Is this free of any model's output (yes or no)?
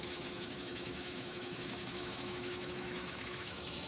no